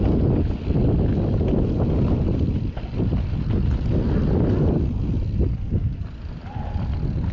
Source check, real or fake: real